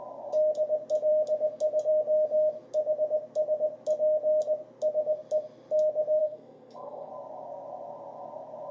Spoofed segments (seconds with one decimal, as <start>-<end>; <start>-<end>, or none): 6.2-7.1